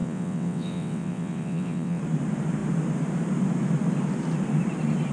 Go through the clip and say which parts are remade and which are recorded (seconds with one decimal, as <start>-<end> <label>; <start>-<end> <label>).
0.0-2.0 remade; 2.0-5.1 recorded